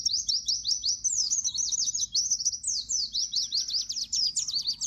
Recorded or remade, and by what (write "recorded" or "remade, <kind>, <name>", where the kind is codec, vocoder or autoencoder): recorded